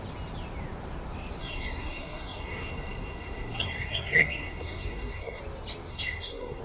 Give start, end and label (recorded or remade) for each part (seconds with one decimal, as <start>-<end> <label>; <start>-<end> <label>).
0.0-1.4 recorded; 1.4-5.4 remade; 5.4-5.9 recorded; 5.9-6.6 remade